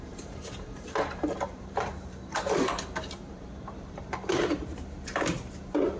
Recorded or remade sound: remade